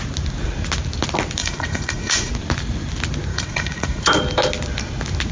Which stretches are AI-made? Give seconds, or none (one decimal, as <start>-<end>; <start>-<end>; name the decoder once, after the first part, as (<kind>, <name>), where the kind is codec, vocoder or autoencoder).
1.4-2.3 (vocoder, Vocos); 3.3-4.0